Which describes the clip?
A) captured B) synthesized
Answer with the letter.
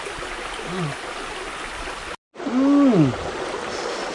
A